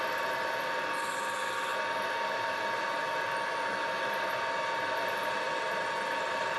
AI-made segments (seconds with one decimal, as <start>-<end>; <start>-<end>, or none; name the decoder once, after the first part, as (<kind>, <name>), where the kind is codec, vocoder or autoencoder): none

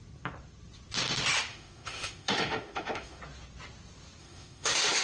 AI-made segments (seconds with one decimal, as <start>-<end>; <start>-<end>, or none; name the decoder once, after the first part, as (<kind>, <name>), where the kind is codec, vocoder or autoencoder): 1.5-3.2 (autoencoder, DAC-VAE); 4.2-5.0

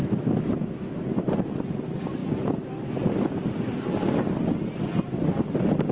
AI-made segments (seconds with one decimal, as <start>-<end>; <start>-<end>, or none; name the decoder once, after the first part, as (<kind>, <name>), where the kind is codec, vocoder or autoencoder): 0.0-1.0 (autoencoder, DAC-VAE)

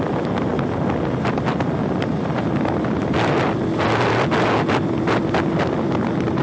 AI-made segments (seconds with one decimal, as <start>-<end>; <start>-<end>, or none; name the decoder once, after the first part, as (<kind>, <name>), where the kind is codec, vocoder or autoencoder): none

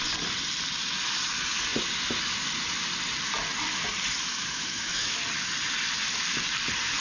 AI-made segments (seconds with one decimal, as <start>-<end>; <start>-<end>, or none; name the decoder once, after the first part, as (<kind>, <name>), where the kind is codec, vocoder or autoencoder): 4.3-5.2 (autoencoder, DAC-VAE)

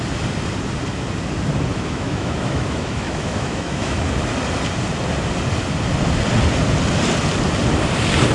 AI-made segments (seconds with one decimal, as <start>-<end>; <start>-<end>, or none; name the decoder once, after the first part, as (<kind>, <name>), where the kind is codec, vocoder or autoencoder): 1.7-4.0 (autoencoder, DAC-VAE)

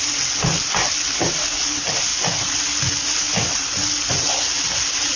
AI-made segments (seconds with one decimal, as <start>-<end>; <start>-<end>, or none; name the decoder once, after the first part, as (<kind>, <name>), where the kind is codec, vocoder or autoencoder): none

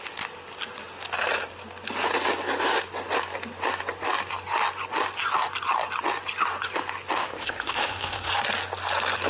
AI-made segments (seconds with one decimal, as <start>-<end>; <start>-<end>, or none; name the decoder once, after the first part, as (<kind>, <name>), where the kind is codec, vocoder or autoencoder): 7.2-8.3 (autoencoder, DAC-VAE)